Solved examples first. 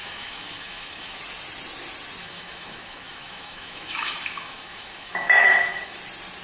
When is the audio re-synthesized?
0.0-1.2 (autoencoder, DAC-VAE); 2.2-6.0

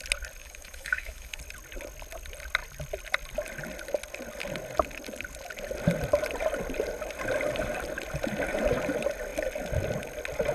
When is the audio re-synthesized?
0.4-1.4 (autoencoder, DAC-VAE)

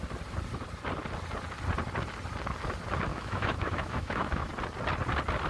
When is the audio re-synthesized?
3.1-4.5 (autoencoder, DAC-VAE)

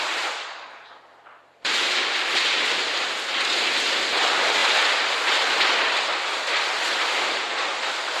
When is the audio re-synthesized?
none

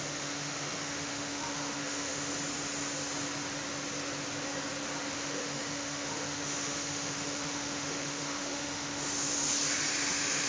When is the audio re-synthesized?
0.0-2.3 (autoencoder, DAC-VAE); 5.1-9.3; 9.9-10.5

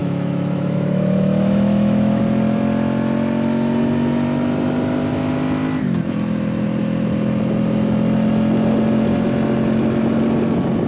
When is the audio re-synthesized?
0.0-2.2 (autoencoder, DAC-VAE)